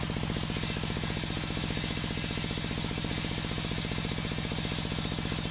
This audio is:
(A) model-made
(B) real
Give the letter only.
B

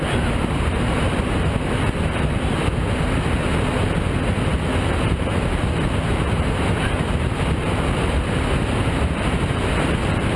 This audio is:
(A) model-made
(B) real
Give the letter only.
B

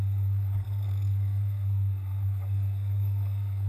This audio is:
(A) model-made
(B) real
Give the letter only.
A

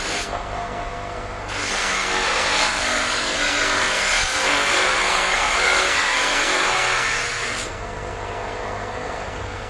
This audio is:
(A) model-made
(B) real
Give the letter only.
A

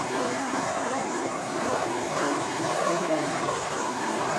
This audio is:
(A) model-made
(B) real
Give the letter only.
A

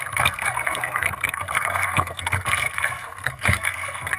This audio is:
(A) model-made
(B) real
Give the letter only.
A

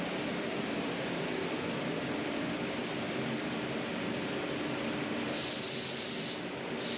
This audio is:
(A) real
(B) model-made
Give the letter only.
A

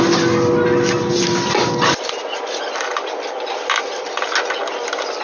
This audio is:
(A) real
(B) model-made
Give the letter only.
A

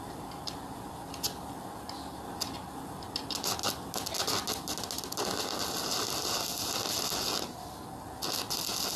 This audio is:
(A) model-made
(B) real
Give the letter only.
B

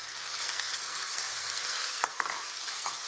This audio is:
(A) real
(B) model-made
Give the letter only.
B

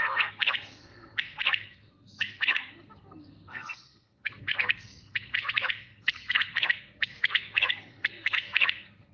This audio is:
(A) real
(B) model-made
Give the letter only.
B